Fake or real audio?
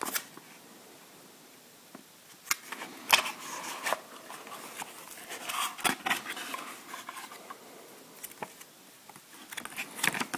real